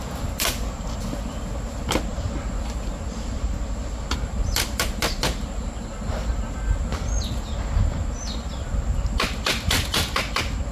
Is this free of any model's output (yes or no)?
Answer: yes